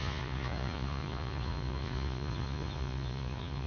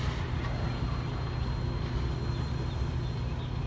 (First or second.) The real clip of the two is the second